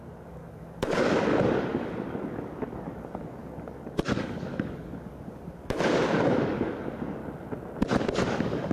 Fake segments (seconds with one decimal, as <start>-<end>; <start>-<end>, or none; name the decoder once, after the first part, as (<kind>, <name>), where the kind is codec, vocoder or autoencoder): 0.0-7.2 (codec, DAC); 8.0-8.7